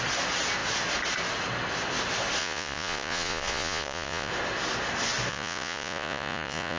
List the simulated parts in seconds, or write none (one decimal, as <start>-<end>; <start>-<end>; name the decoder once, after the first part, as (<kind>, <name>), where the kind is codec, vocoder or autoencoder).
2.4-4.3 (vocoder, Vocos); 5.3-6.8